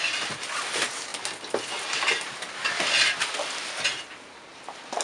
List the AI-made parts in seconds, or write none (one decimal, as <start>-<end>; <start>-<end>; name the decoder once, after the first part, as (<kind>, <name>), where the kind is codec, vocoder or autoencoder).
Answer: none

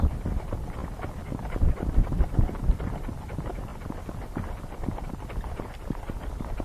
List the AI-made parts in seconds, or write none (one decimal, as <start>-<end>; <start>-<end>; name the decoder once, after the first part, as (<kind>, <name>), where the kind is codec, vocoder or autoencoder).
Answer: 0.0-3.7 (vocoder, BigVGAN v2); 4.6-6.6

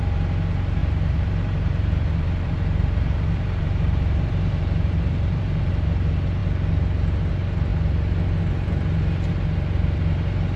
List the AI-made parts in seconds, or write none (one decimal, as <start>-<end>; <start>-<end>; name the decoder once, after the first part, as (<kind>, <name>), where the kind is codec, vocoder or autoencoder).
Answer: 0.8-5.7 (vocoder, BigVGAN v2)

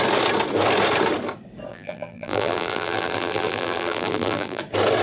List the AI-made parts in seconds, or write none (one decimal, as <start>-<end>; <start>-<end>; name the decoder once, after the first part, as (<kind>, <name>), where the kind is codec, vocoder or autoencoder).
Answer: 1.7-4.6 (vocoder, BigVGAN v2)